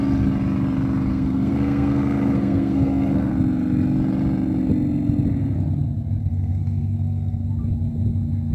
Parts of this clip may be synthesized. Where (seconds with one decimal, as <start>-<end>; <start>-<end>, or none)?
1.1-3.3; 6.2-7.5